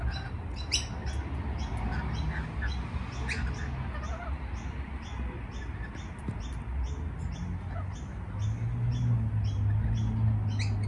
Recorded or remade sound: recorded